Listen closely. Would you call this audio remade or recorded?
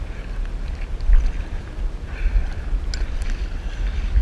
recorded